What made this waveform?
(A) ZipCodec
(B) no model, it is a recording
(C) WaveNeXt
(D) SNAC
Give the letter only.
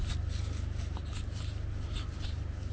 B